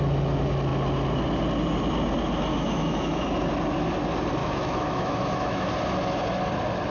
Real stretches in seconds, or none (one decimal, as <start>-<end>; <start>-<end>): 0.0-2.5; 3.2-4.4; 5.7-6.9